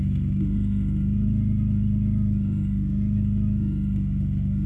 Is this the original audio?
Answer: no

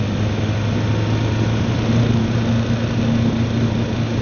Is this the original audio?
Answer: yes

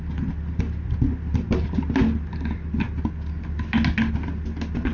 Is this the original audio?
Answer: yes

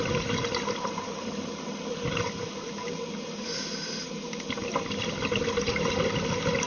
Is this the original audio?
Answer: yes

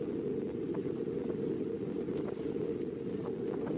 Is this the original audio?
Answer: yes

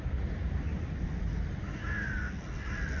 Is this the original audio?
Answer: yes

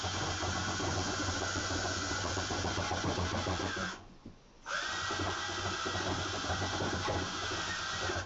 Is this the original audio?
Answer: no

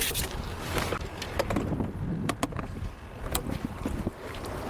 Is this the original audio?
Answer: yes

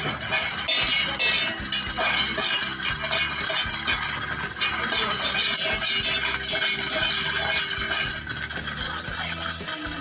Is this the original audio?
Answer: yes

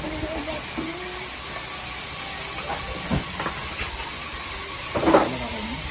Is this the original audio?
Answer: yes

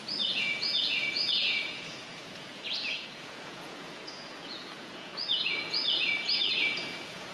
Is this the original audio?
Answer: no